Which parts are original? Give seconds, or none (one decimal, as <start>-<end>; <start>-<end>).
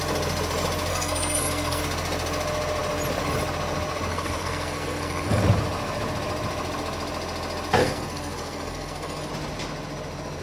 0.0-0.9; 1.8-4.1; 5.4-7.8; 9.3-10.4